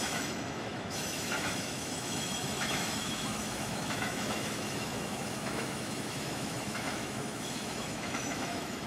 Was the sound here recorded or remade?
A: remade